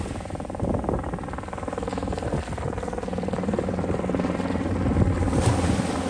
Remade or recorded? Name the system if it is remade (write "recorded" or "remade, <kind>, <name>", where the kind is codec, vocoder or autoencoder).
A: recorded